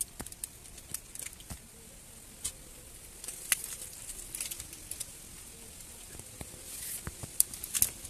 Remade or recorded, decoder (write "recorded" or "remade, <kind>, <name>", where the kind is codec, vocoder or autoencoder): recorded